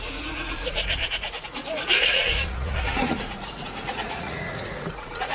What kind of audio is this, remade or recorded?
remade